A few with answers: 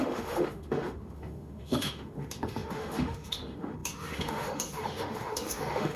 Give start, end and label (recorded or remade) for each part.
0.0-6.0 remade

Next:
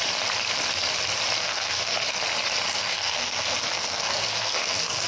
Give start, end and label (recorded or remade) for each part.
0.0-1.4 recorded; 1.4-2.2 remade; 2.2-2.7 recorded; 2.7-5.1 remade

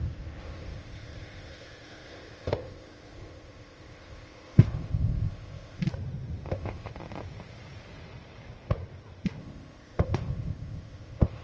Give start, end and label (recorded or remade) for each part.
0.0-5.8 remade; 5.8-6.5 recorded; 6.5-6.9 remade; 6.9-9.4 recorded; 9.4-11.4 remade

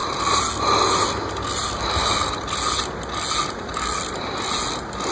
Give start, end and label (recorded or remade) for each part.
0.0-5.1 recorded

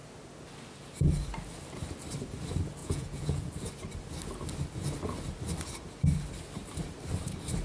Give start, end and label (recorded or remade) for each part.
0.0-2.8 recorded; 2.8-3.5 remade; 3.5-7.6 recorded